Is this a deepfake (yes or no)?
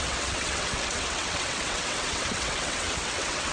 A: yes